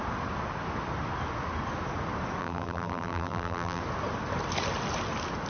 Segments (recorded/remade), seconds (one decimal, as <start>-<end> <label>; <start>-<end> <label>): 0.0-2.4 recorded; 2.4-3.8 remade; 3.8-5.5 recorded